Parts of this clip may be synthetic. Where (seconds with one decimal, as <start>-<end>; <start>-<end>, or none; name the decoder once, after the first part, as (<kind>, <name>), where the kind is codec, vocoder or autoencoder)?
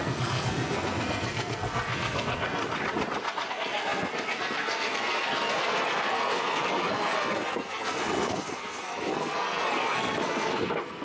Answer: 0.0-2.6 (codec, SNAC); 3.5-11.0